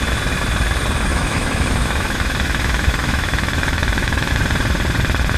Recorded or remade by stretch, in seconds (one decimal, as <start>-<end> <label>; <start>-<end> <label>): 0.0-1.1 recorded; 1.1-4.3 remade; 4.3-5.4 recorded

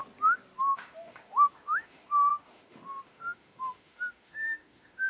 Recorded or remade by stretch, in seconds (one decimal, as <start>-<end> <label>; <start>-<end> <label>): 0.0-0.7 recorded; 0.7-5.1 remade